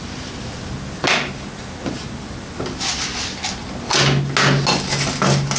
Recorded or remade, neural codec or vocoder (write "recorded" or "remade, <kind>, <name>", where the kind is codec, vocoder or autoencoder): recorded